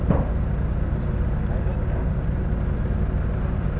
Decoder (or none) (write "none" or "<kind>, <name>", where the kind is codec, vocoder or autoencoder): none